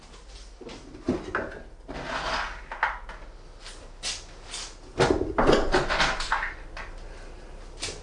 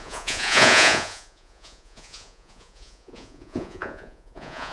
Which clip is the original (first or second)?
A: first